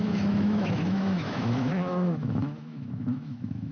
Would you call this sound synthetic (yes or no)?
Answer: yes